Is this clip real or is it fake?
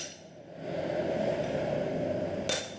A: real